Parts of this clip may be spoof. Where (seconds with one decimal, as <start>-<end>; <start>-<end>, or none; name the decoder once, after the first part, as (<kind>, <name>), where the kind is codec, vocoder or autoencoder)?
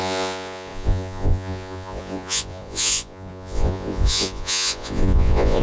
0.0-5.6 (vocoder, Vocos)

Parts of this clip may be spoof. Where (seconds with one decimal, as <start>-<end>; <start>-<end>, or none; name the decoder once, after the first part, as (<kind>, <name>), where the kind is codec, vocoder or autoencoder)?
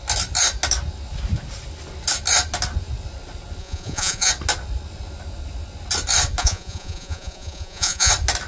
3.6-4.3 (vocoder, Vocos); 6.4-8.1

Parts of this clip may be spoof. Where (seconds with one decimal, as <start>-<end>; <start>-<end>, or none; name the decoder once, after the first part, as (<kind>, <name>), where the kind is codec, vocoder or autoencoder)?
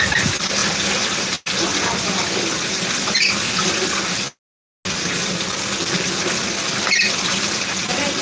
none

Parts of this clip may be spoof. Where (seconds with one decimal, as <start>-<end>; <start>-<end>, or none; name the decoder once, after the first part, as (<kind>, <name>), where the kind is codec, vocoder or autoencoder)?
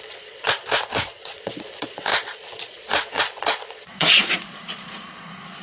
0.0-5.6 (vocoder, Vocos)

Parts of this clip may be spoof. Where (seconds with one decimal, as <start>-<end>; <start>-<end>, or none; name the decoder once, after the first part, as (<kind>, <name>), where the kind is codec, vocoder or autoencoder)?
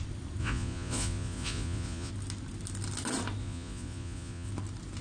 0.4-2.1 (vocoder, Vocos); 3.4-4.5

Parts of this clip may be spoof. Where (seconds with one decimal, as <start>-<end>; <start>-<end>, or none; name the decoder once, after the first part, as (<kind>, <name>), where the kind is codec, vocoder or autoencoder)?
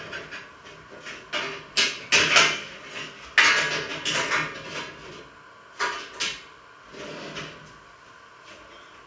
none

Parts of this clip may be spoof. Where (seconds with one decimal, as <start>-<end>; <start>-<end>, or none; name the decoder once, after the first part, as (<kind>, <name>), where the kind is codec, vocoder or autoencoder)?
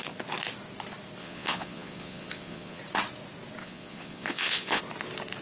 1.2-2.8 (vocoder, Vocos); 3.6-4.8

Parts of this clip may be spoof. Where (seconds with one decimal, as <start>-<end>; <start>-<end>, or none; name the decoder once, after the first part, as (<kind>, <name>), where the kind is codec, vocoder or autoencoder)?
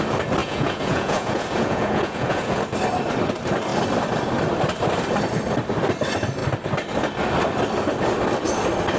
0.4-2.6 (vocoder, Vocos)